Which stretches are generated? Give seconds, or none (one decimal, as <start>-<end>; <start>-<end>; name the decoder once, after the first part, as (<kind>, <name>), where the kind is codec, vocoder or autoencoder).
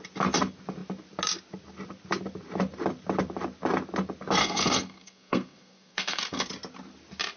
4.4-6.5 (codec, SNAC)